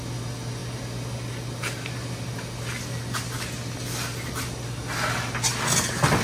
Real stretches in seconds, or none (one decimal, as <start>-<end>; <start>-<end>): 0.0-6.2